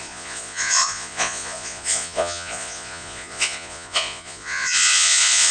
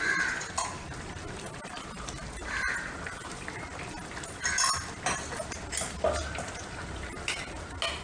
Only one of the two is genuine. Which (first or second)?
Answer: second